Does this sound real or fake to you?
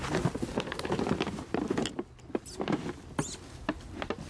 real